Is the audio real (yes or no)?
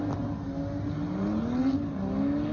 yes